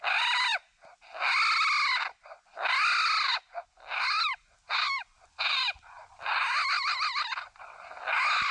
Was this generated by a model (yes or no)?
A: no